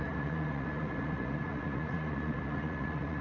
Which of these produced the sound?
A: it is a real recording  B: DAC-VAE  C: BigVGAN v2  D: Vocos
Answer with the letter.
D